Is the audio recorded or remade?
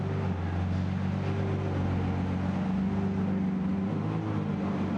recorded